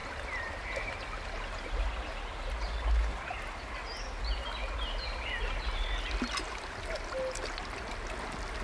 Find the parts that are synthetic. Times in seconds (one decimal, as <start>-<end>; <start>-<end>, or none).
none